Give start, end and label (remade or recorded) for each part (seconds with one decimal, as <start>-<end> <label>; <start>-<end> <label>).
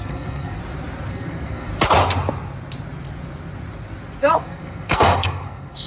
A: 0.0-0.6 remade; 0.6-1.1 recorded; 1.1-1.7 remade; 1.7-4.2 recorded; 4.2-5.9 remade